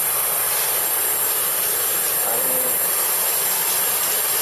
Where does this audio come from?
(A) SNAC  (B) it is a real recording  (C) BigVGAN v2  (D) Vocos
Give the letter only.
B